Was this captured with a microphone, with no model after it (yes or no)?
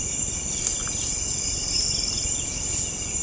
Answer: yes